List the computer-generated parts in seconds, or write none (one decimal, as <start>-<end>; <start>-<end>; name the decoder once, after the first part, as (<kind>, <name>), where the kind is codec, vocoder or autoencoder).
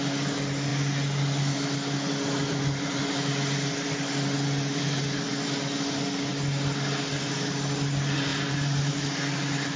8.3-8.9 (vocoder, BigVGAN v2)